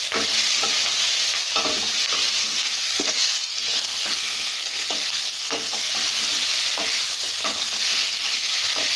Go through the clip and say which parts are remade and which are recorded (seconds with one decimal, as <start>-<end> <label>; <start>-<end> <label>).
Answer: 0.0-2.4 recorded; 2.4-5.9 remade; 5.9-7.4 recorded; 7.4-8.6 remade; 8.6-9.0 recorded